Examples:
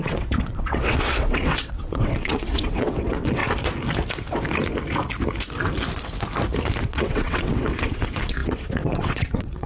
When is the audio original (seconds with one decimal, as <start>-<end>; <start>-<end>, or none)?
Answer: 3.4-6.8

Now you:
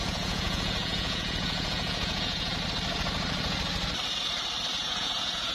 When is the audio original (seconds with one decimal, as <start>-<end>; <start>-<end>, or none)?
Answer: 2.5-4.8

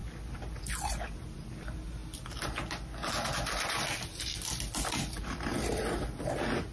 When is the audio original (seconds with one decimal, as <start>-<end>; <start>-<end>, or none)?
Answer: 0.0-6.7

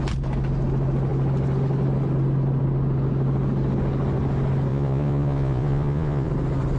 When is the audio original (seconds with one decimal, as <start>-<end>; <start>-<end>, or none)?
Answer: 0.0-4.7; 6.3-6.8